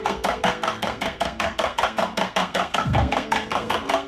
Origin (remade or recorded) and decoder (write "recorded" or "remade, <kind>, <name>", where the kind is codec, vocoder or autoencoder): remade, codec, SNAC